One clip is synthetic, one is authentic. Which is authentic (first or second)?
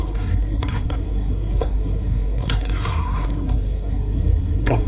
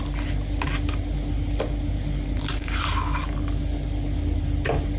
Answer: second